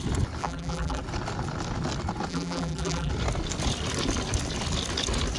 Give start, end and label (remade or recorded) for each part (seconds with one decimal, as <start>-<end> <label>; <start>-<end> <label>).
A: 0.0-0.4 recorded; 0.4-1.0 remade; 1.0-2.3 recorded; 2.3-3.1 remade; 3.1-5.4 recorded